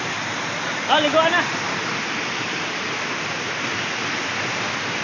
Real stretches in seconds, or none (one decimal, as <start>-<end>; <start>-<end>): 0.0-5.0